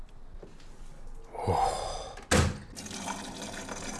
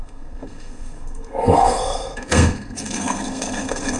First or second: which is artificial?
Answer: second